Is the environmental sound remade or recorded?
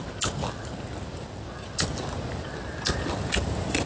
recorded